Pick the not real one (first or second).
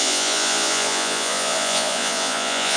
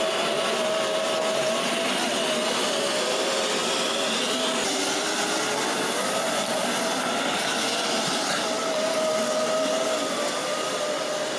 first